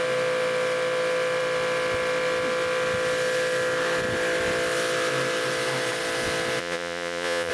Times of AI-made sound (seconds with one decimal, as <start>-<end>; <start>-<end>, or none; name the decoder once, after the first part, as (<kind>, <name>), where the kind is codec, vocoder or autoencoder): 6.6-7.5 (vocoder, Vocos)